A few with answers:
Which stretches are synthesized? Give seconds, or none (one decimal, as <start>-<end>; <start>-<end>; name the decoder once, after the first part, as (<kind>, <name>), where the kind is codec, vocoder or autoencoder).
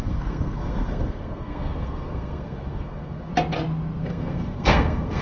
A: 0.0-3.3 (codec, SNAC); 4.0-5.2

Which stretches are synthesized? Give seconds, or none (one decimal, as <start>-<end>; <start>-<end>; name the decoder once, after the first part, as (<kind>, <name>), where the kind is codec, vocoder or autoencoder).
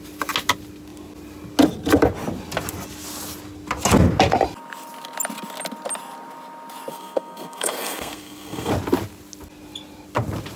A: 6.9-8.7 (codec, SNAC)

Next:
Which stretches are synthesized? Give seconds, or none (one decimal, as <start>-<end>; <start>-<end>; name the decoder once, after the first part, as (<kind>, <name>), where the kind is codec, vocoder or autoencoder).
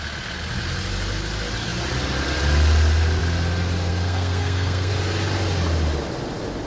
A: 3.9-4.9 (codec, SNAC)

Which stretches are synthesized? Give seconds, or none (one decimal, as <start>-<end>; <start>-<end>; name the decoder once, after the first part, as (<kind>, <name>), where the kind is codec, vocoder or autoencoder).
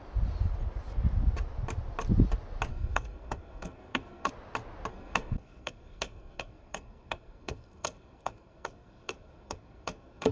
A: 2.7-4.3 (codec, SNAC); 4.9-10.3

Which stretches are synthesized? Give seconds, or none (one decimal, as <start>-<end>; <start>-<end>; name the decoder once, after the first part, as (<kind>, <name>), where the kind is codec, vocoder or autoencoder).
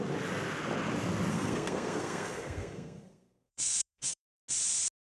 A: 1.3-4.4 (codec, SNAC)